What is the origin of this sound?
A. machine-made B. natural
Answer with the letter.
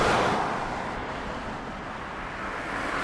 B